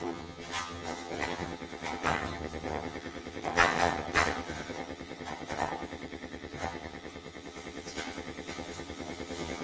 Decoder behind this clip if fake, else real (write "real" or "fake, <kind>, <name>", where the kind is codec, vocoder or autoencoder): fake, vocoder, HiFi-GAN